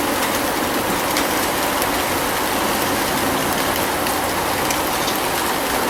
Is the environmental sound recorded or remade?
recorded